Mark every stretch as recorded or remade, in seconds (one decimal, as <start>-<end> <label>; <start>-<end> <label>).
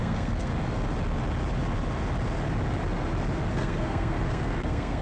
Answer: 0.0-0.5 remade; 0.5-3.5 recorded; 3.5-5.0 remade